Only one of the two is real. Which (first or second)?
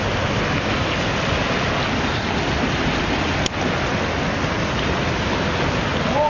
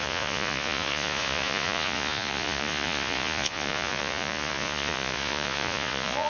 first